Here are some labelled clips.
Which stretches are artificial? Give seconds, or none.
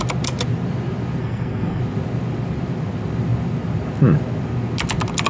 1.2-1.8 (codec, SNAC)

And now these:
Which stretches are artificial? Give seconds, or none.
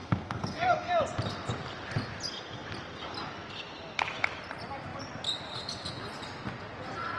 0.0-0.9 (codec, SNAC)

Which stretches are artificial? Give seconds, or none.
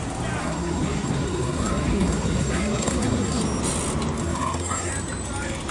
0.4-3.4 (codec, SNAC); 4.2-4.9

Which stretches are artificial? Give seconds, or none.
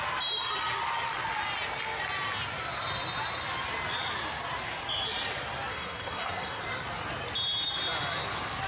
5.7-6.6 (codec, SNAC)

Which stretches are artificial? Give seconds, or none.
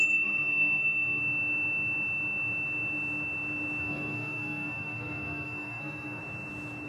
0.0-1.2 (codec, SNAC); 3.8-6.2